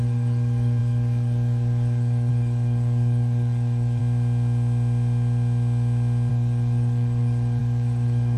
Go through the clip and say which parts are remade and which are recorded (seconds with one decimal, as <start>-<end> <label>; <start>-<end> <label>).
0.0-4.0 remade; 4.0-6.3 recorded; 6.3-8.4 remade